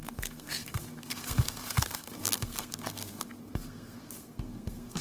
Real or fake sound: fake